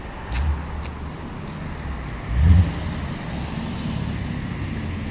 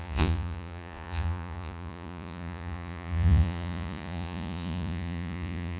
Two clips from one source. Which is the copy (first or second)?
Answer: second